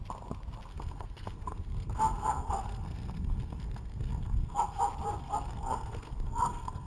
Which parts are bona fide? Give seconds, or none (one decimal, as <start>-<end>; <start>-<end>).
0.0-0.7; 4.8-5.2